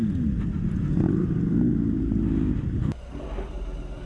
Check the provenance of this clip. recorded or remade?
recorded